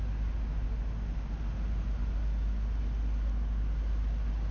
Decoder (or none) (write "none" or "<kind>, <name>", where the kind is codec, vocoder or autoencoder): none